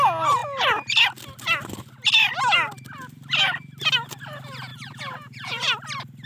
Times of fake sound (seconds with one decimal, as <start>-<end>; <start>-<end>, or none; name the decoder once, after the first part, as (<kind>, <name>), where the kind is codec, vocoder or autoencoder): 4.7-5.6 (vocoder, Vocos)